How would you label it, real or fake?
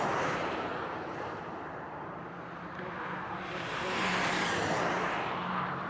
fake